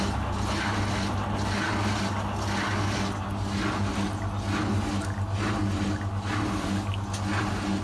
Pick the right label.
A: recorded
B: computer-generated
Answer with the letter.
A